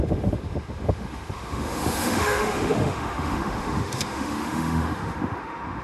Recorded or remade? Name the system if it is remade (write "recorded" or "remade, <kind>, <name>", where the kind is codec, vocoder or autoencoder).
remade, autoencoder, DAC-VAE